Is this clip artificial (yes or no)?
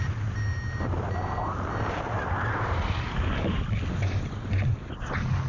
no